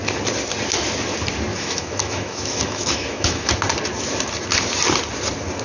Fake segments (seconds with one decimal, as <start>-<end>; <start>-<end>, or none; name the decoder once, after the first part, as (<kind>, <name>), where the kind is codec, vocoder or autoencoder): 1.5-3.5 (autoencoder, DAC-VAE)